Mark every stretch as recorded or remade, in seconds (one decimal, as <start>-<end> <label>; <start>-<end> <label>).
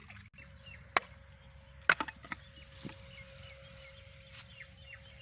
0.0-5.2 recorded